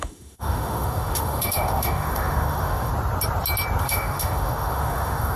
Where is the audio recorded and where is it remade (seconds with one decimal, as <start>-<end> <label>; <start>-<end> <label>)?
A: 0.0-2.9 remade; 2.9-3.8 recorded; 3.8-5.4 remade